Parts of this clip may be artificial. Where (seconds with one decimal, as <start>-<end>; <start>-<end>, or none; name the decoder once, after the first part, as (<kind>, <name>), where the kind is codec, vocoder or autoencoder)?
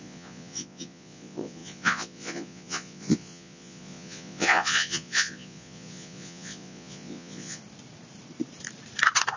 0.0-7.6 (vocoder, Vocos)